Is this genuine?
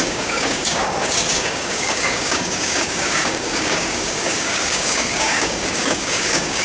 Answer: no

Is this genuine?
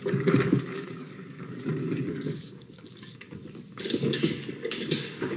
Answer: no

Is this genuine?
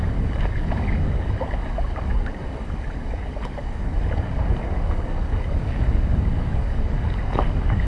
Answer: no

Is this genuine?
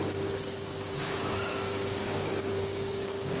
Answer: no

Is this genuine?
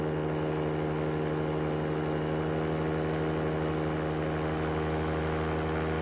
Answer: yes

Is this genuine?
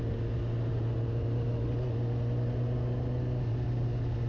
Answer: yes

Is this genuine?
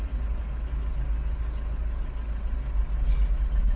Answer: yes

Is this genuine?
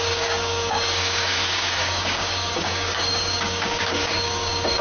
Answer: no